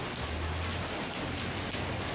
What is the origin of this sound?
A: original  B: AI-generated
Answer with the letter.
A